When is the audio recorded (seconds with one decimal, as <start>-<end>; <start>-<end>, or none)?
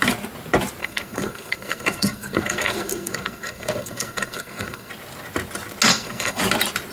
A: 0.0-0.8; 4.9-5.9; 6.4-6.9